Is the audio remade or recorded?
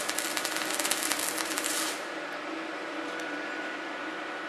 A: recorded